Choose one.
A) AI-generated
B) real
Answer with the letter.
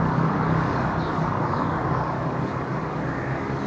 A